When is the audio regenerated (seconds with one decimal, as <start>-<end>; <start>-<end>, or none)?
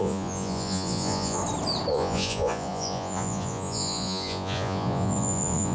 0.0-1.4; 1.9-5.7